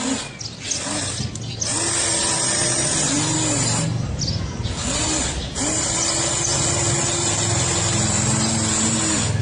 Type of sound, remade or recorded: recorded